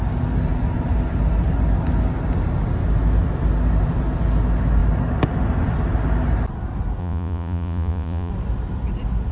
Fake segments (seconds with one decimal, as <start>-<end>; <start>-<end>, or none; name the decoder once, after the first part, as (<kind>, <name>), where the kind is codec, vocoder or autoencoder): 7.0-8.3 (vocoder, Vocos)